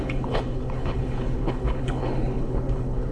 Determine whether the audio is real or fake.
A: fake